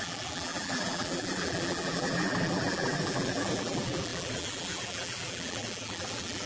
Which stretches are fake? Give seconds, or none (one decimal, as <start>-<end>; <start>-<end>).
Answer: 0.0-6.5